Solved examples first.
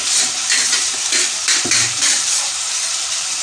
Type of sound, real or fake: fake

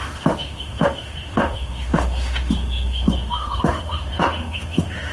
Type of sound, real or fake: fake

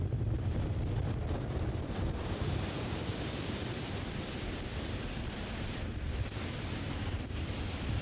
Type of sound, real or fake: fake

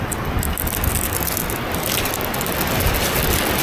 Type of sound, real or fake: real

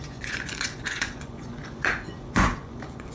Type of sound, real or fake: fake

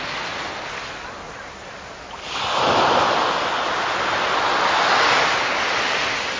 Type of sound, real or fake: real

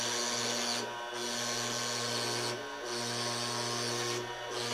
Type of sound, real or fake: real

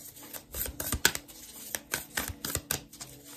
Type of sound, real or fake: real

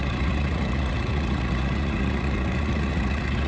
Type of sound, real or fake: fake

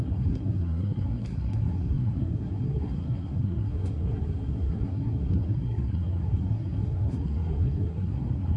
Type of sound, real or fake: fake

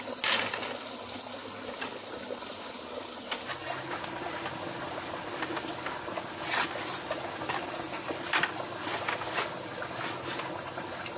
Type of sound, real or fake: real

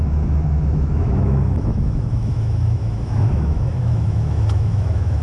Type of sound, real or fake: fake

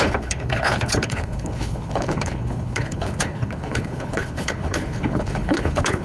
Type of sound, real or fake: fake